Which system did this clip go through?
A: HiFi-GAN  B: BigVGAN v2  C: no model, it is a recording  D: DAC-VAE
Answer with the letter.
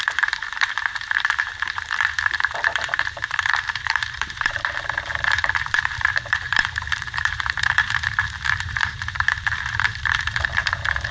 B